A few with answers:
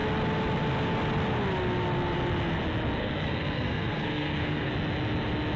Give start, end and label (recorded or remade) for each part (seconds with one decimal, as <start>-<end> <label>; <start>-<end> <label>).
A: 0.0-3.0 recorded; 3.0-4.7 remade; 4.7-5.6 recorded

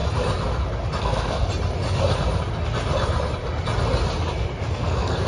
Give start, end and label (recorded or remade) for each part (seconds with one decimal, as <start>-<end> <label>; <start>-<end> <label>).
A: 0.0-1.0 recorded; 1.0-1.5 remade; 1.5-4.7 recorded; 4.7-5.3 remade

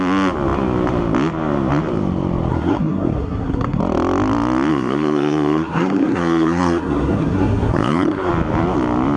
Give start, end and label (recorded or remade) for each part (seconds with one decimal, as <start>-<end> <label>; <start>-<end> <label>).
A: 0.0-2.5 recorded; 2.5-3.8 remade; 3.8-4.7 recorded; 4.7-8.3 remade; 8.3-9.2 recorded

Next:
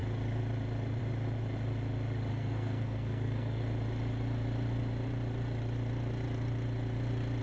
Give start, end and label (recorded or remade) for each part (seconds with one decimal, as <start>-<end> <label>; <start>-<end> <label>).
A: 0.0-2.3 recorded; 2.3-3.6 remade; 3.6-7.4 recorded

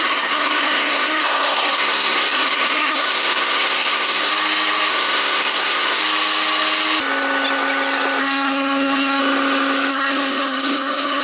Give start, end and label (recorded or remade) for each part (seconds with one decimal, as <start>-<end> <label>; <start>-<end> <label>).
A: 0.0-4.3 remade; 4.3-4.9 recorded; 4.9-6.0 remade; 6.0-8.2 recorded; 8.2-9.2 remade; 9.2-9.9 recorded; 9.9-11.2 remade

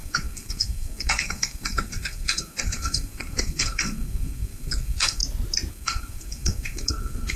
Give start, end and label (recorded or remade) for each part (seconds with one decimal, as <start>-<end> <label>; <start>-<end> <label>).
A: 0.0-5.2 remade; 5.2-5.7 recorded; 5.7-7.4 remade